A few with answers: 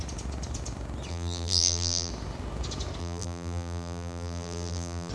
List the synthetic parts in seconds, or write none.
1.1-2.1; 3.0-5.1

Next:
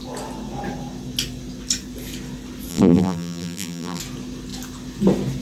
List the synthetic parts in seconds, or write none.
2.7-4.0

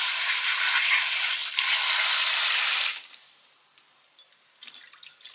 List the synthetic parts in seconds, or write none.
0.0-1.4; 2.1-5.3

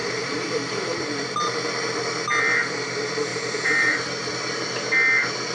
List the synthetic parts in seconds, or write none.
0.0-1.3; 3.3-4.3